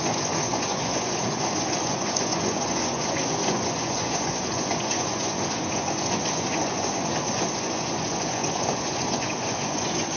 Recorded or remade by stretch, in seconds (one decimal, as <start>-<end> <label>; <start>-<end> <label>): 0.0-10.2 remade

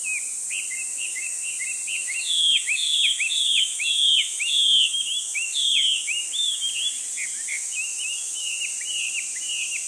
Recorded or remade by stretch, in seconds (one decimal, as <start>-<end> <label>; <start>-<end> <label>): 0.0-0.9 recorded; 0.9-1.5 remade; 1.5-2.0 recorded; 2.0-6.6 remade; 6.6-7.5 recorded; 7.5-8.6 remade; 8.6-9.9 recorded

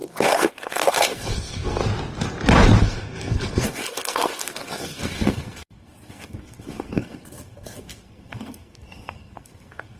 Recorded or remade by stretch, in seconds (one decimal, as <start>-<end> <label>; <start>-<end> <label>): 0.0-1.8 remade; 1.8-2.8 recorded; 2.8-10.0 remade

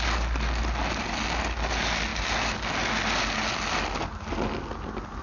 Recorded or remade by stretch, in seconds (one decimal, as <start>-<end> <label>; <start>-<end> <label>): 0.0-5.2 recorded

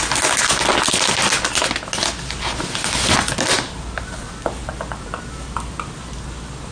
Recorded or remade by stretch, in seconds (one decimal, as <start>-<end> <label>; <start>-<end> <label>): 0.0-6.7 recorded